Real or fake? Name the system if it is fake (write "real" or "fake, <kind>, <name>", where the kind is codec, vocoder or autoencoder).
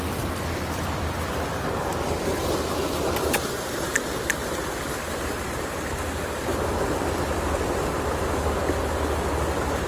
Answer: fake, vocoder, BigVGAN v2